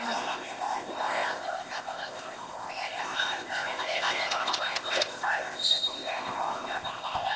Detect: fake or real fake